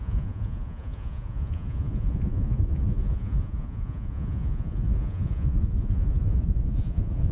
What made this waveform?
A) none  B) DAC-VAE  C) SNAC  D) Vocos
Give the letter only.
D